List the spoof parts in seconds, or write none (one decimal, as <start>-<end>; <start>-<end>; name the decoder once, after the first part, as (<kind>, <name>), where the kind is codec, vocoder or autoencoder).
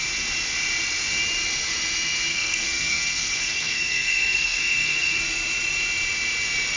2.3-5.2 (codec, SNAC)